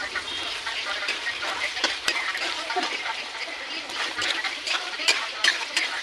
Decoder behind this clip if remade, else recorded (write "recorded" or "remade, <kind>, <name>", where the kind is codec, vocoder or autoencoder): remade, vocoder, BigVGAN v2